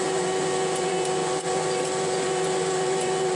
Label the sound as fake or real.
fake